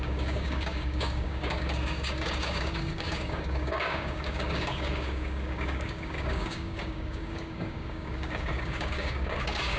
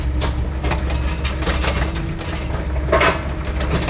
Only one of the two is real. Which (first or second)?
second